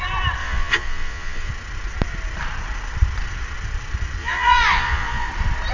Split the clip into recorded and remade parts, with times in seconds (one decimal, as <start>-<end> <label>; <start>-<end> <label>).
0.0-0.4 recorded; 0.4-1.5 remade; 1.5-4.2 recorded; 4.2-5.3 remade; 5.3-5.7 recorded